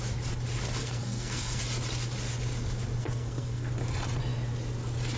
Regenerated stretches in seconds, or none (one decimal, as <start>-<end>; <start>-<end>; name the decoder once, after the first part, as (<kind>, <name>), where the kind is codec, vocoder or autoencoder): 0.8-1.6 (codec, SNAC); 3.0-3.7